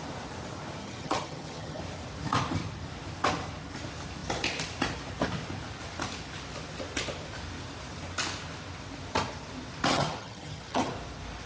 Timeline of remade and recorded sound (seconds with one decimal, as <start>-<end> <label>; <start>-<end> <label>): 0.0-0.8 recorded; 0.8-1.8 remade; 1.8-9.9 recorded; 9.9-10.9 remade; 10.9-11.5 recorded

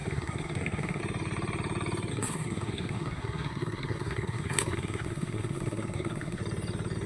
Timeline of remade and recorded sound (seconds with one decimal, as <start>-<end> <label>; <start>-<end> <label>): 0.0-1.0 remade; 1.0-2.1 recorded; 2.1-6.4 remade; 6.4-7.1 recorded

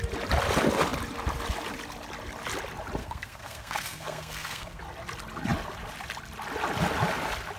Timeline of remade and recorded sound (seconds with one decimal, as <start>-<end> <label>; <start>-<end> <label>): 0.0-3.0 recorded; 3.0-4.8 remade; 4.8-7.6 recorded